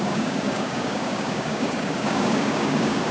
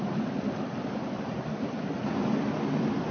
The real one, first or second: second